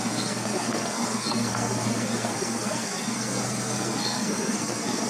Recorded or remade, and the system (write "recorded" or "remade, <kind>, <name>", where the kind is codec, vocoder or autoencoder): remade, codec, SNAC